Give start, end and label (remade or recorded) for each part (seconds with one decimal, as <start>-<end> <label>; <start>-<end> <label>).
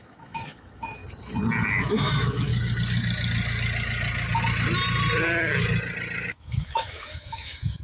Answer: 0.0-1.0 remade; 1.0-1.7 recorded; 1.7-2.5 remade; 2.5-6.3 recorded; 6.3-7.8 remade